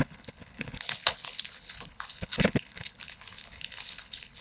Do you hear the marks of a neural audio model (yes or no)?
yes